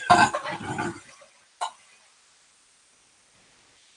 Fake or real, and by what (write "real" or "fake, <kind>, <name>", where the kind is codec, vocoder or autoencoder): real